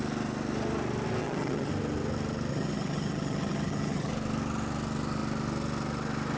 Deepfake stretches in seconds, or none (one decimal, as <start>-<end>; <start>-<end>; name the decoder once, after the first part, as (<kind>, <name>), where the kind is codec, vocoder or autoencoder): 1.2-1.7 (vocoder, HiFi-GAN); 2.5-4.1